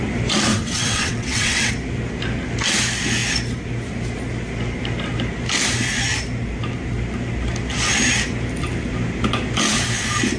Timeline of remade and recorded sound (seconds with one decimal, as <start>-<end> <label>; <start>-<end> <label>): 0.0-0.5 recorded; 0.5-1.7 remade; 1.7-10.4 recorded